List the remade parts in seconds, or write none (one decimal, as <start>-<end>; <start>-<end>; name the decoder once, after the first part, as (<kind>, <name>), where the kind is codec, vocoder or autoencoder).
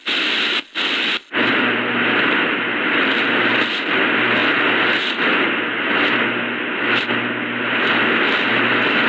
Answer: none